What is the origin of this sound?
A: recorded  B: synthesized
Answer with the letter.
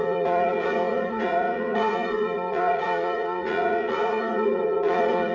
B